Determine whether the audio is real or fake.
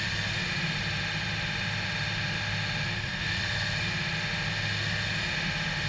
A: real